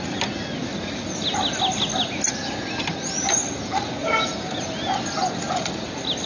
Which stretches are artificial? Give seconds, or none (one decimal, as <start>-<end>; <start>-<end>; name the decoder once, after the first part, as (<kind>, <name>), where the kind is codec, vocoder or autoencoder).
none